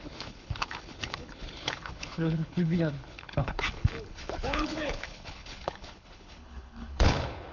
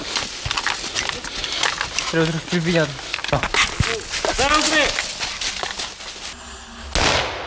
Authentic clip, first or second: second